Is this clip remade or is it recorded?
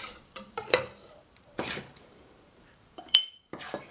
remade